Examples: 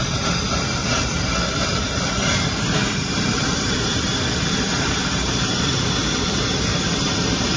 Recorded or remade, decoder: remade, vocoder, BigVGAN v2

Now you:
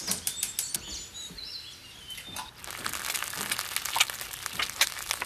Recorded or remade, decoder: recorded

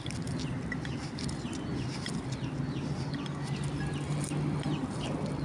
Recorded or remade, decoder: recorded